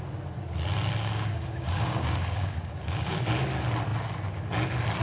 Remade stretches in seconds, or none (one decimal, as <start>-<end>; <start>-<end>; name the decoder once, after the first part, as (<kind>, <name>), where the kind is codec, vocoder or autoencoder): 1.0-3.3 (codec, DAC)